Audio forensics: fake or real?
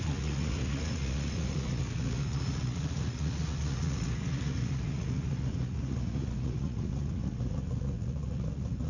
fake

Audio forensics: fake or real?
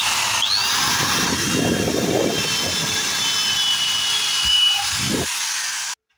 real